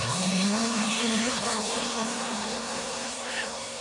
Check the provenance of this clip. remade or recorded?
remade